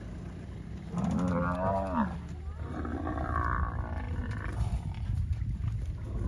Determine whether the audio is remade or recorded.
recorded